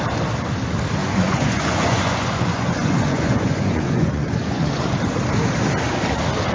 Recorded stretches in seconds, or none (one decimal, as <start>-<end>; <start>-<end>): 0.0-1.0; 4.9-6.5